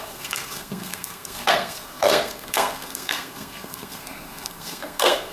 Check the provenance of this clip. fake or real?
fake